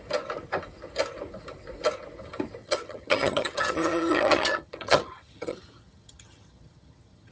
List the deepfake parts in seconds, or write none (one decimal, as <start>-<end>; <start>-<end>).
2.6-7.3